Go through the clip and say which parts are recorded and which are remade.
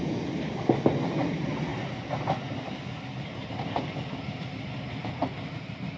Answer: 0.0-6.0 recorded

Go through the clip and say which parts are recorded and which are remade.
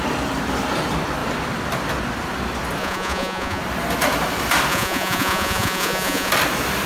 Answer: 0.0-2.8 recorded; 2.8-3.6 remade; 3.6-4.7 recorded; 4.7-6.3 remade; 6.3-6.9 recorded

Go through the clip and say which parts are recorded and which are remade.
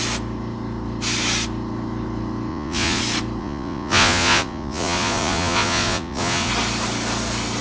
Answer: 0.0-2.5 recorded; 2.5-3.0 remade; 3.0-3.4 recorded; 3.4-6.5 remade; 6.5-7.6 recorded